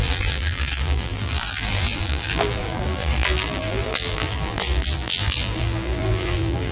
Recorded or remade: remade